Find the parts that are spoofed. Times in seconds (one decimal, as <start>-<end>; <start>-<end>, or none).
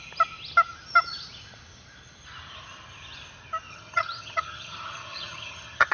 3.7-5.9